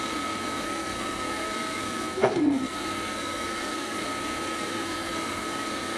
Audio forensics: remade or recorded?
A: remade